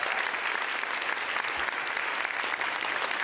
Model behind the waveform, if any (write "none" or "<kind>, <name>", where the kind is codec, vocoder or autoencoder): none